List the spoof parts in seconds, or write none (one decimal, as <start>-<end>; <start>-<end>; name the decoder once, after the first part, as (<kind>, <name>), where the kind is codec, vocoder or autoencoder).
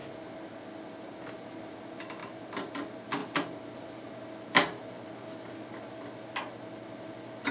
none